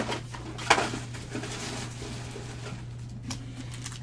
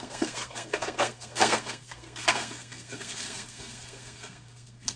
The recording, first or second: first